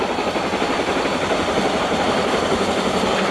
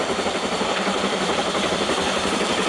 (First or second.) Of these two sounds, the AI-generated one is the second